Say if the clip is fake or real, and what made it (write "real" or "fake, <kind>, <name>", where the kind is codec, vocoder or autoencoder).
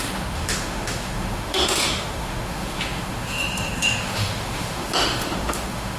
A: fake, autoencoder, DAC-VAE